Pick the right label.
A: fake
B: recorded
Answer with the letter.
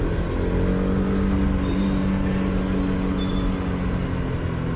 B